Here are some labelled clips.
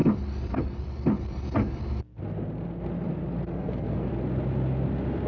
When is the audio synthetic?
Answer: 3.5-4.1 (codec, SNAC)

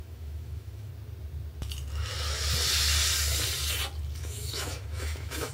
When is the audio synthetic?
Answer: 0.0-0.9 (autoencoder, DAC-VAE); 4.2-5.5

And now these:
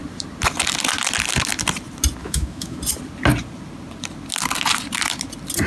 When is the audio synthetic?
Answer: 2.2-2.8 (autoencoder, DAC-VAE)

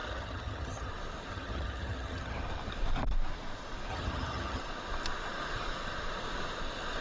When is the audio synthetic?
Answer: 0.0-0.9 (vocoder, HiFi-GAN); 1.3-2.4; 3.9-4.6